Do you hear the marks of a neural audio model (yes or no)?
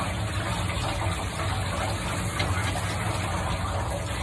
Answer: no